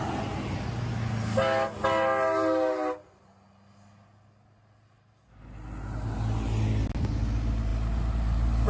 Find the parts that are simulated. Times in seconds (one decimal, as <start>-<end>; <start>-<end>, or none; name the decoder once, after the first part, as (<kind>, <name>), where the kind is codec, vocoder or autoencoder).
none